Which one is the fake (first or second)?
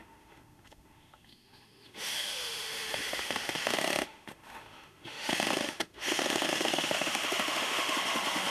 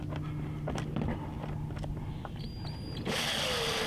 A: first